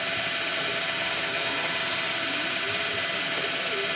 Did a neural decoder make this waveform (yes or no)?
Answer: no